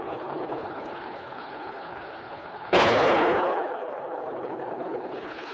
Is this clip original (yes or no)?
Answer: no